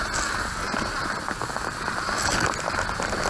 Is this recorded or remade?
recorded